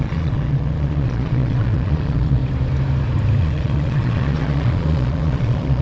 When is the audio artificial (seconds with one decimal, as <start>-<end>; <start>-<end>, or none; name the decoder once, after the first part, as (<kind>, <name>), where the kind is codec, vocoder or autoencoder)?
0.0-2.4 (vocoder, Vocos); 3.4-5.8